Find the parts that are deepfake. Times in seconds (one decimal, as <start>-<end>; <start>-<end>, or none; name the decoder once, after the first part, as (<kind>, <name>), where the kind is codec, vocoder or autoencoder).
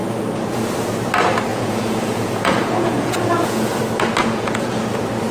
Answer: 1.5-3.8 (vocoder, Vocos); 4.2-4.8